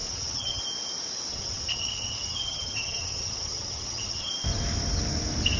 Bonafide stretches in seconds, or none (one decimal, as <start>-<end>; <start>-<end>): 0.6-1.3; 4.3-5.6